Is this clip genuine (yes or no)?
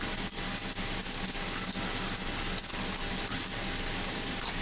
yes